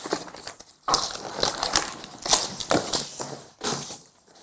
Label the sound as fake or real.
real